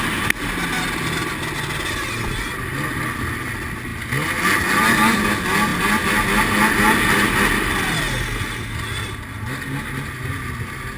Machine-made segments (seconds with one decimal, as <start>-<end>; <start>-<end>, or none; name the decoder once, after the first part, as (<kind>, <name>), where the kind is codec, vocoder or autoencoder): none